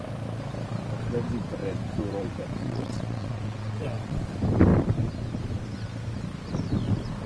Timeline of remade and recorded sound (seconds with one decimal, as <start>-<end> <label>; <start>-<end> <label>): 0.0-2.6 recorded; 2.6-4.2 remade; 4.2-7.3 recorded